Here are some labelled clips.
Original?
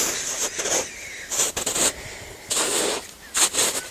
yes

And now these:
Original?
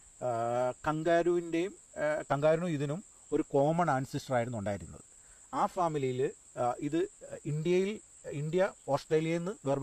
yes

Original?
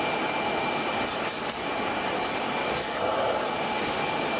yes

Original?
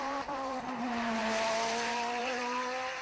no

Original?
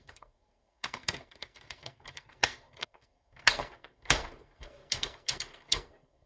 no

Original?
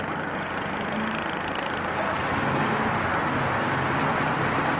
yes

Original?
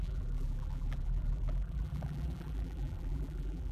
no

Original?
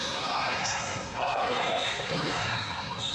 no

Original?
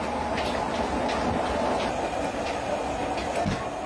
yes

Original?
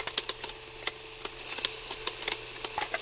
yes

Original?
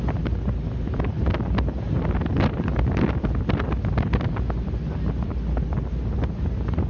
yes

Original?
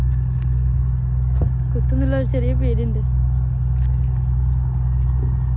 yes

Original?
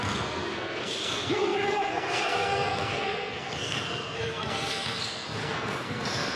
no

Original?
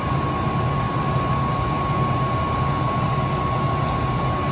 yes